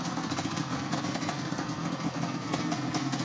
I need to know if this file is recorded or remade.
remade